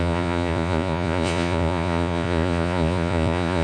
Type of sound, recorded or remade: remade